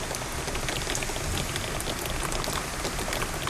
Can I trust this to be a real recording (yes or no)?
yes